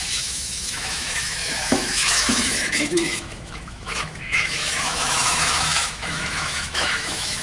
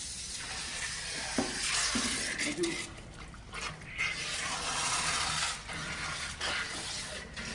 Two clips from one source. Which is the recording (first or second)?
second